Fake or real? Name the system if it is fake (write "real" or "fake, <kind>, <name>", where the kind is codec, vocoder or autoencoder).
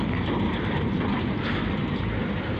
real